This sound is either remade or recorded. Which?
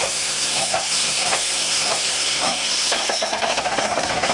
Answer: remade